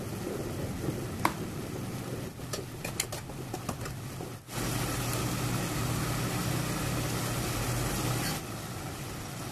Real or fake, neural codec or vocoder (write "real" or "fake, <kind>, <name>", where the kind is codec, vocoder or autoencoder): real